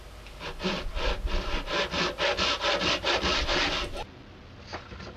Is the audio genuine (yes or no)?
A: yes